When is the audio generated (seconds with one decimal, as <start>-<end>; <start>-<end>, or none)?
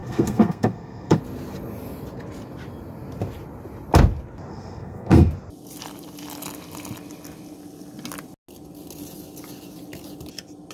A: 0.0-1.2; 4.5-5.3